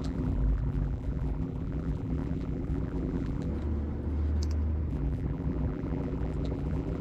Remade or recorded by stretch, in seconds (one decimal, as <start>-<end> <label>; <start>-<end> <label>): 0.0-3.5 remade; 3.5-4.9 recorded; 4.9-7.0 remade